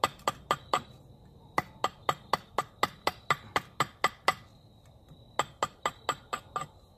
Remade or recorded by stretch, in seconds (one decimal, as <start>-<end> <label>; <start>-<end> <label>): 0.0-7.0 recorded